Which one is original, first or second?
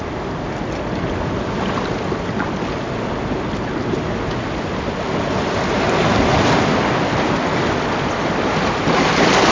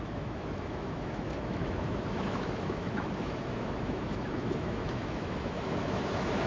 first